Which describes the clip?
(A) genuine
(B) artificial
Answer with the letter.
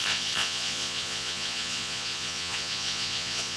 B